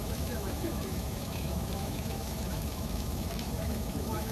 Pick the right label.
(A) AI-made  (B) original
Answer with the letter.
A